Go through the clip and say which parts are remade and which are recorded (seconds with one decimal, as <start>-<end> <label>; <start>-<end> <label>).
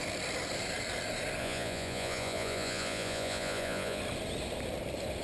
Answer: 0.0-1.4 recorded; 1.4-4.0 remade; 4.0-5.2 recorded